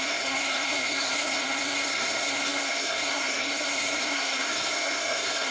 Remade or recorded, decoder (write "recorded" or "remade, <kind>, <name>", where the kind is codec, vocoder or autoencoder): remade, codec, SNAC